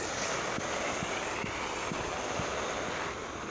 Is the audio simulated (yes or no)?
no